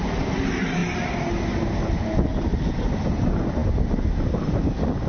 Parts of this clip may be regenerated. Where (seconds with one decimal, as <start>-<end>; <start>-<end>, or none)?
none